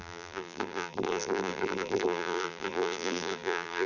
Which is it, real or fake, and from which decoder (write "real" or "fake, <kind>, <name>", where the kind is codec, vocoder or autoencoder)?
fake, vocoder, BigVGAN v2